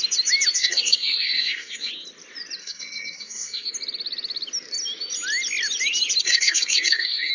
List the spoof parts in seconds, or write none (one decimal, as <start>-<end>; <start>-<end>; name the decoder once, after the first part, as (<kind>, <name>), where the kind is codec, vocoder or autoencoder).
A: 0.6-1.9 (codec, SNAC); 2.6-3.7; 6.2-7.3